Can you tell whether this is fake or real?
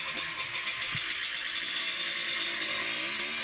real